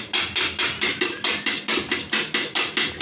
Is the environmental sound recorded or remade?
recorded